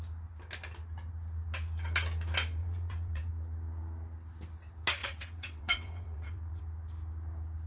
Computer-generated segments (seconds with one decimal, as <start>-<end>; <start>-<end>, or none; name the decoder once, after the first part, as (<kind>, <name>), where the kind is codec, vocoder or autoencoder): 2.6-3.3 (vocoder, WaveNeXt); 5.0-6.6